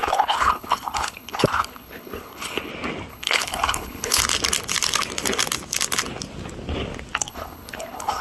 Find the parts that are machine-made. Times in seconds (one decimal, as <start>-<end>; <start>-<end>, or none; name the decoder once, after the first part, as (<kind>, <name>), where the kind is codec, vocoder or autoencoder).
0.0-2.7 (codec, HILCodec); 3.1-4.2; 7.3-8.2